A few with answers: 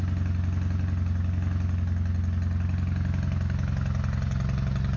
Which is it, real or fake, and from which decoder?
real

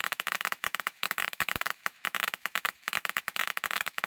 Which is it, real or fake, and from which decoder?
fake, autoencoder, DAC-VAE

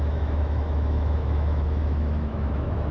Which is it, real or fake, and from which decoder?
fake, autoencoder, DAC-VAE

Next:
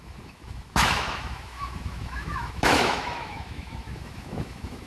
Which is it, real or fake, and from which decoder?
fake, autoencoder, DAC-VAE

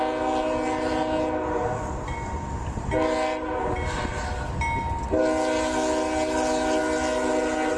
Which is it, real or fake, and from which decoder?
real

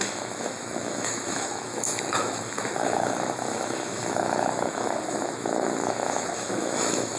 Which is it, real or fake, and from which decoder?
fake, autoencoder, DAC-VAE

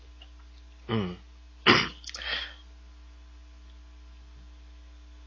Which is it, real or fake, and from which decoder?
real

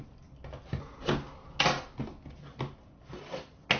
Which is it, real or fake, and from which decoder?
real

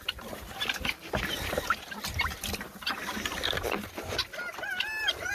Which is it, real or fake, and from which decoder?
real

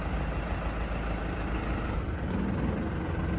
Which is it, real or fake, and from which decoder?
real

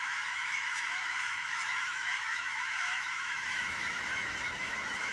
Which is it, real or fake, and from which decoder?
fake, autoencoder, DAC-VAE